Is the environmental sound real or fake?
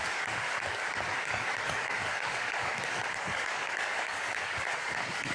fake